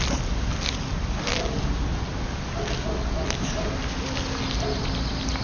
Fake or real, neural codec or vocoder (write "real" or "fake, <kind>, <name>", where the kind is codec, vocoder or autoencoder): real